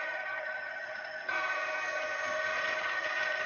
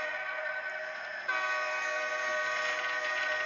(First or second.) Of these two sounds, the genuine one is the second